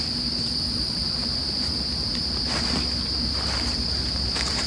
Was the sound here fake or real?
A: real